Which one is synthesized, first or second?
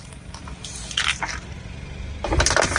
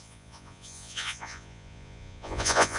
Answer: second